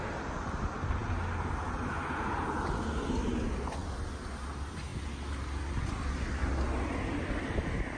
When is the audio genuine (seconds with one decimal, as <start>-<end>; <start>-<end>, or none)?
0.0-8.0